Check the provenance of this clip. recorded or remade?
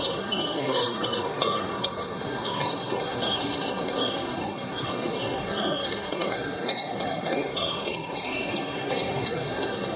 remade